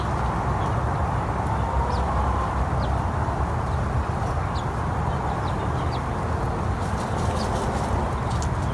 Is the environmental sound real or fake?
real